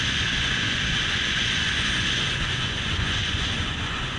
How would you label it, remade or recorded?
remade